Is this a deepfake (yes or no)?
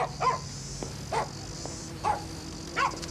no